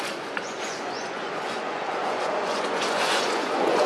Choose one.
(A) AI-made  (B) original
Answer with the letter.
A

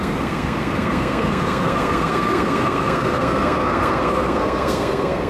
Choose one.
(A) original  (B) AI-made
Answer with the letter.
B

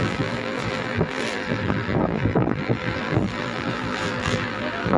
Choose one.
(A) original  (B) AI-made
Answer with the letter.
B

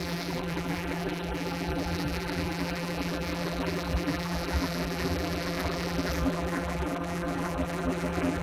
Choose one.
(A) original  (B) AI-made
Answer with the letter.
B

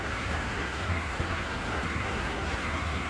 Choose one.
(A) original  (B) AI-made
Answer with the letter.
B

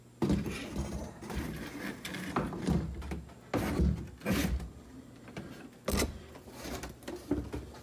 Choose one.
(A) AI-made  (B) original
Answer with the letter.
B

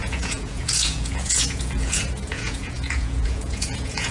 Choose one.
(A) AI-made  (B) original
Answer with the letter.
A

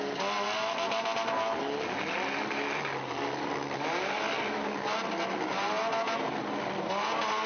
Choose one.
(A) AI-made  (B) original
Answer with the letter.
B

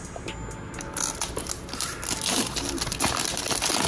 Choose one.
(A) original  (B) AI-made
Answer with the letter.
A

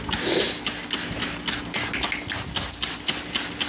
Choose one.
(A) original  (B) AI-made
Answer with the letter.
A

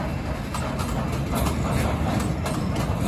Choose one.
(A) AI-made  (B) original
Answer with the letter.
B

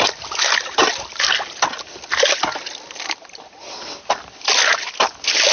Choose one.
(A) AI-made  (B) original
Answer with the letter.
B